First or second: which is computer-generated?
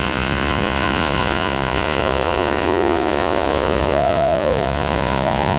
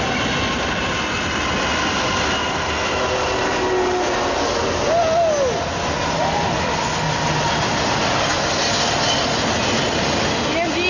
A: first